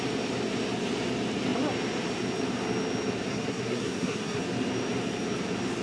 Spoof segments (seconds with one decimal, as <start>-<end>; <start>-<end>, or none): 3.3-4.4